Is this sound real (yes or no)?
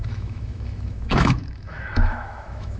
no